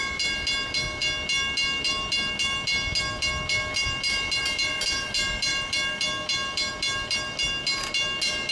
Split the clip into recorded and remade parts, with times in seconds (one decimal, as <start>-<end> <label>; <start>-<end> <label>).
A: 0.0-8.5 recorded